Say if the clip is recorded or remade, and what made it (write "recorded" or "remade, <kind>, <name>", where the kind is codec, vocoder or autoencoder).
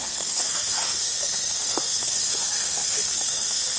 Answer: remade, codec, SNAC